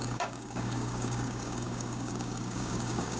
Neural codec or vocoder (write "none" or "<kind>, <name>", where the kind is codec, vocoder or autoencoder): codec, DAC